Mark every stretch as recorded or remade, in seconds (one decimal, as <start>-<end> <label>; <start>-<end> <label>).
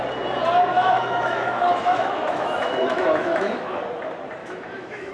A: 0.0-0.7 recorded; 0.7-3.8 remade; 3.8-4.4 recorded; 4.4-5.1 remade